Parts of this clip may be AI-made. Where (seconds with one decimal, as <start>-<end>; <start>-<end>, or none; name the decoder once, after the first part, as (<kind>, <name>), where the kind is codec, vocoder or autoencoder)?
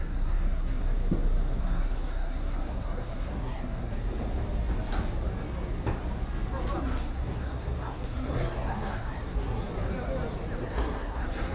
0.0-0.8 (codec, SNAC); 1.6-3.9; 6.8-9.7; 10.6-11.5